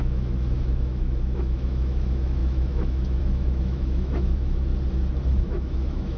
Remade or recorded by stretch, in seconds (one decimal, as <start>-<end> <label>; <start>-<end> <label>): 0.0-4.7 remade; 4.7-5.4 recorded; 5.4-6.2 remade